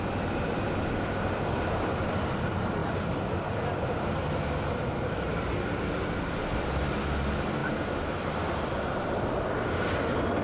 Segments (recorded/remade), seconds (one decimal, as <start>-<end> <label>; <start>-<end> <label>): 0.0-7.6 recorded; 7.6-9.0 remade; 9.0-10.4 recorded